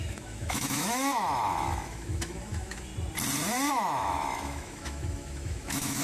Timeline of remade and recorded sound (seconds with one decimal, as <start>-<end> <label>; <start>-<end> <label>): 0.0-2.9 remade; 2.9-3.7 recorded; 3.7-6.0 remade